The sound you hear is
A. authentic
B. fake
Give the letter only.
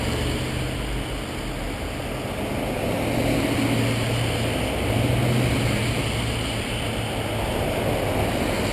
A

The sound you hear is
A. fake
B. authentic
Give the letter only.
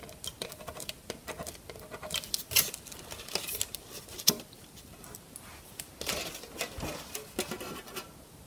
B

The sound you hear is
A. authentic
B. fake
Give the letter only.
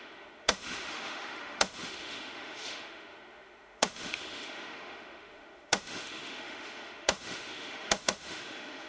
B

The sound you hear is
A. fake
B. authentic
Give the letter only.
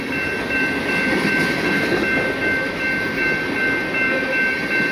B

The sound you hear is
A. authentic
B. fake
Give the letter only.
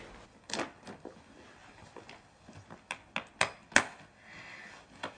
A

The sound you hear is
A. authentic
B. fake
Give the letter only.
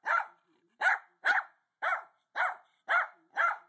B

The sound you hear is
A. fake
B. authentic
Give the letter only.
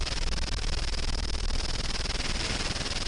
A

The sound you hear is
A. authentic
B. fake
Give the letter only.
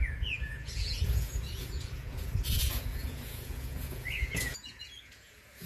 B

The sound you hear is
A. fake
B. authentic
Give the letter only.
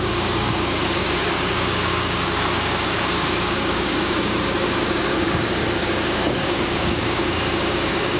A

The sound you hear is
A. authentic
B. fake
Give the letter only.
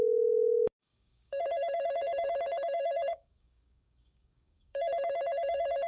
B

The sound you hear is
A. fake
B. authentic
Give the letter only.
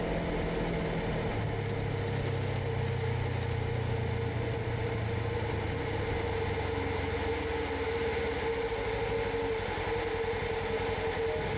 B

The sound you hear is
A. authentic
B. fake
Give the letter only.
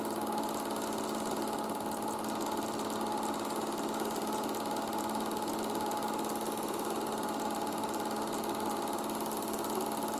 A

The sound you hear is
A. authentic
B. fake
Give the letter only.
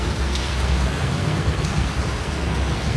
B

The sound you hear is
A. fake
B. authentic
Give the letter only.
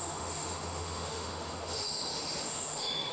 A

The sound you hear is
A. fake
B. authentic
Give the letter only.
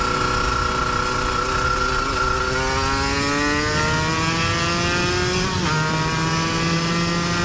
B